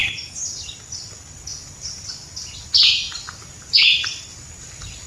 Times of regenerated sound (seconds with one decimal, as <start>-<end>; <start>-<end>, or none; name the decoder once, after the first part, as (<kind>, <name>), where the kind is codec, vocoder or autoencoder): none